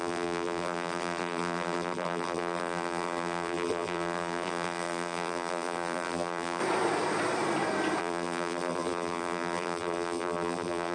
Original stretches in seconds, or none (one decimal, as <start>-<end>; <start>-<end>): 6.6-8.0